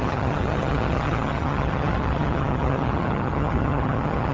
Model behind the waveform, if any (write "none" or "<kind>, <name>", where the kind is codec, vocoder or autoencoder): vocoder, HiFi-GAN